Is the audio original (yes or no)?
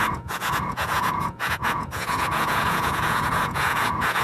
no